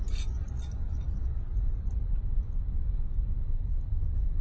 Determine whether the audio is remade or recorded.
recorded